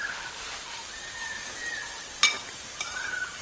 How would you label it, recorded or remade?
recorded